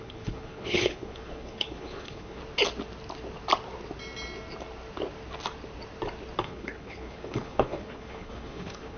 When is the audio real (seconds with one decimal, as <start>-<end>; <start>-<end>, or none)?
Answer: 2.4-6.4